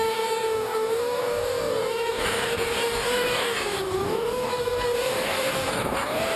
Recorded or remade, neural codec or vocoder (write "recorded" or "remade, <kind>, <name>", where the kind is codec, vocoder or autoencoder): remade, codec, DAC